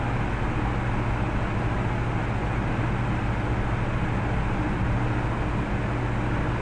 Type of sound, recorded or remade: recorded